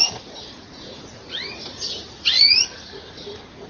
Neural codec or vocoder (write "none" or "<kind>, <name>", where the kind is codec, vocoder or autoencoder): vocoder, Vocos